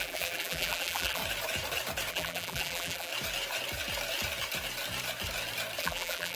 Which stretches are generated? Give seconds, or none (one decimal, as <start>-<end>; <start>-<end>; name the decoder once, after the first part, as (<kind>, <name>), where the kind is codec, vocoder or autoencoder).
0.0-1.2 (vocoder, BigVGAN v2); 2.1-3.1; 5.8-6.3